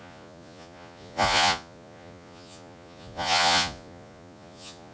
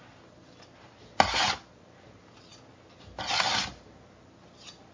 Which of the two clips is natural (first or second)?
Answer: second